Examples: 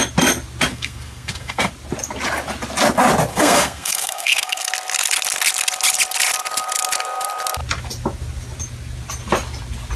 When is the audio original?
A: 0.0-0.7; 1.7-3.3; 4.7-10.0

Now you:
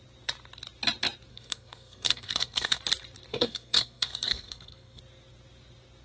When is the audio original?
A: 0.0-1.3; 2.8-3.3; 5.0-6.0

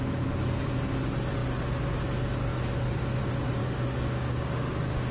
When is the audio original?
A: 0.0-3.6

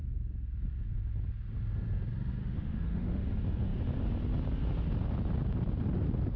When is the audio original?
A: 0.0-2.4; 3.3-6.4

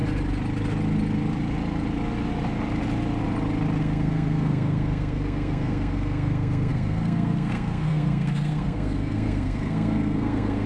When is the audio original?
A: 0.0-3.8

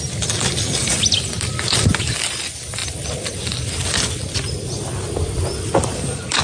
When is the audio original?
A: 0.0-6.4

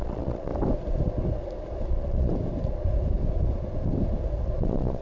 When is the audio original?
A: 0.5-1.9; 2.3-4.6